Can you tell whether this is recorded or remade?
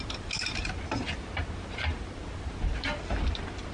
recorded